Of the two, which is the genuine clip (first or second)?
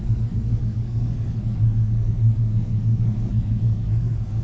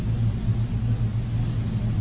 second